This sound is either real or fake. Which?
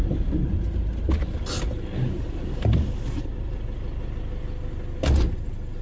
real